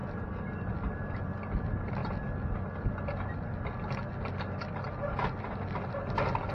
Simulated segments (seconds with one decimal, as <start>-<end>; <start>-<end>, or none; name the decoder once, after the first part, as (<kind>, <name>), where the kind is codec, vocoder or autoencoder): none